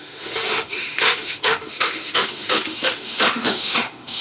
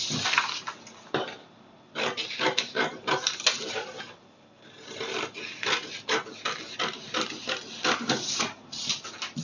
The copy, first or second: first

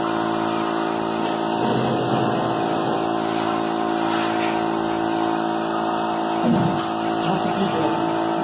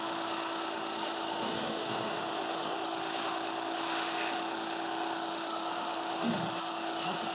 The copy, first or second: second